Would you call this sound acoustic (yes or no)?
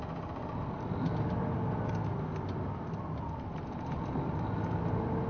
yes